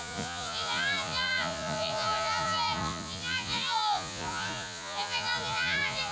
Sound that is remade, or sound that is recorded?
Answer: remade